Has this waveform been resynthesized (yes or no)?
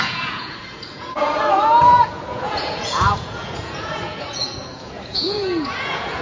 yes